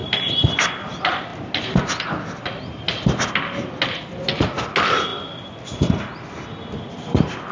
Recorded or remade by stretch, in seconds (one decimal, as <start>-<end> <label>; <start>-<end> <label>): 0.0-7.5 recorded